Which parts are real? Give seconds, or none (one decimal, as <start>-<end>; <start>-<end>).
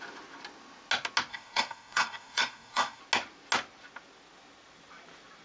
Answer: 0.0-1.3; 3.0-5.4